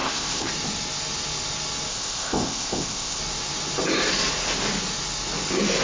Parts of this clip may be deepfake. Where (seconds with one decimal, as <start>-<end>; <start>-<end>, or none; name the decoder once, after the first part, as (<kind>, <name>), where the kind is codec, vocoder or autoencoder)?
0.0-0.5 (codec, ZipCodec); 1.9-3.2